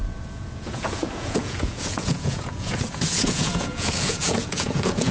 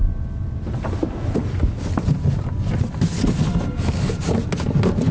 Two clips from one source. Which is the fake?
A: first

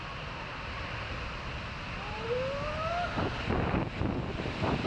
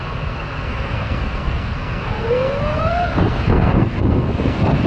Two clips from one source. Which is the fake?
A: second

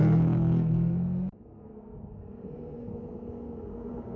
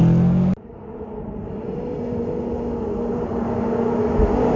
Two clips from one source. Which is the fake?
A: first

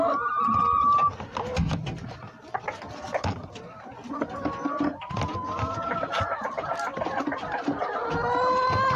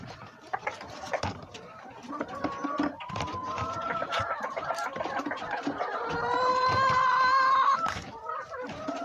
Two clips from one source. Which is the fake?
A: second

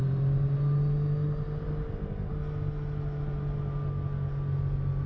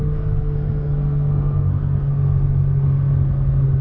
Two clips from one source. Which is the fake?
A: second